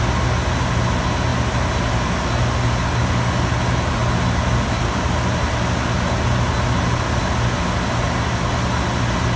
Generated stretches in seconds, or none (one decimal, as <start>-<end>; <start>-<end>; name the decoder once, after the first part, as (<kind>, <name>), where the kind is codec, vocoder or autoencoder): none